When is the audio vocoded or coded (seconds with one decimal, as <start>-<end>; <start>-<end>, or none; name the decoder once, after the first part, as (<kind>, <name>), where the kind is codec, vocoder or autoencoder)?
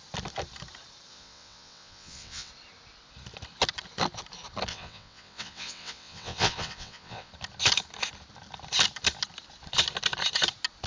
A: 1.1-2.5 (vocoder, WaveNeXt); 4.7-7.3